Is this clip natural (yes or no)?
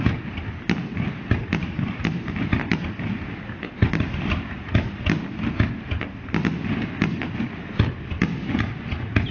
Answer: yes